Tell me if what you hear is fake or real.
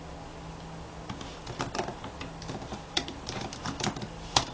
real